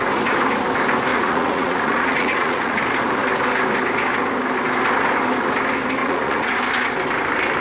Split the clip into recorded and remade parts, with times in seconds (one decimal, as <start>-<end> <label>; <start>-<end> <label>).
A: 0.0-1.1 recorded; 1.1-2.8 remade; 2.8-6.0 recorded; 6.0-6.6 remade; 6.6-7.6 recorded